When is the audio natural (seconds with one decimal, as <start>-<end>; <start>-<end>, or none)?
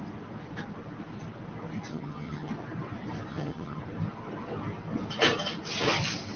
0.0-1.9; 2.5-3.3; 3.8-6.4